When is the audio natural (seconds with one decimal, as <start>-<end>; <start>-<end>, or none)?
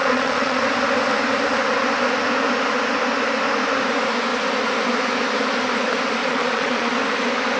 0.6-6.2; 6.9-7.6